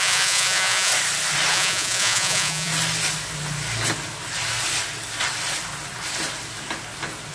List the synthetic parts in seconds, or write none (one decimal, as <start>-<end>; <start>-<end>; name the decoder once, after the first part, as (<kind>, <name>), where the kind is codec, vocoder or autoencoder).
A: 0.0-0.9 (vocoder, Vocos); 1.5-2.7

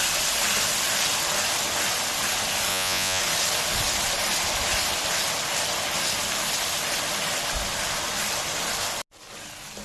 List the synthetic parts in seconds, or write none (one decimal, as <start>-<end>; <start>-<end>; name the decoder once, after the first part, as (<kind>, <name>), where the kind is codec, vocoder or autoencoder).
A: 2.7-3.2 (vocoder, Vocos)

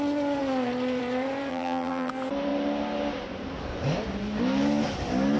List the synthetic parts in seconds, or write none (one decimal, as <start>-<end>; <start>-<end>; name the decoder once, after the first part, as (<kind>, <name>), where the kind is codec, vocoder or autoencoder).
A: 1.5-2.1 (vocoder, BigVGAN v2)

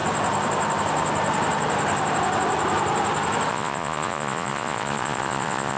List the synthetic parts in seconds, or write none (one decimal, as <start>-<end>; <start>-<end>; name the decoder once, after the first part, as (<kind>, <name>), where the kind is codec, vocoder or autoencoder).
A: 3.5-5.8 (vocoder, Vocos)

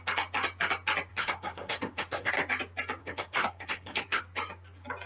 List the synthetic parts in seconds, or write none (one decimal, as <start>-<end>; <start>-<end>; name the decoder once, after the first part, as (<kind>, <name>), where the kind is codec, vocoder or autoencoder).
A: 1.1-2.3 (codec, SNAC); 3.0-4.2

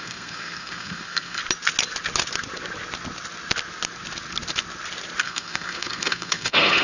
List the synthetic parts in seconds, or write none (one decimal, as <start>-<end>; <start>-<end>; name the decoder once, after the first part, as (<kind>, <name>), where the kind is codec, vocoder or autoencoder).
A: 0.0-1.4 (codec, SNAC); 5.2-6.8

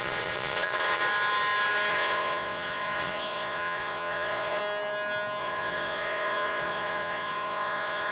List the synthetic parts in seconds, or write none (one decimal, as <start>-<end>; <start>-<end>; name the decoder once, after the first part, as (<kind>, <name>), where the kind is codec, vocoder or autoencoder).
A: 0.0-1.0 (vocoder, Vocos); 1.9-4.6; 5.4-8.1